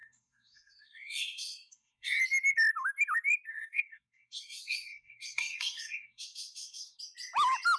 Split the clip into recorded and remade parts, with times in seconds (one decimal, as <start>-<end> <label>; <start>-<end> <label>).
0.0-2.2 remade; 2.2-3.5 recorded; 3.5-7.0 remade; 7.0-7.8 recorded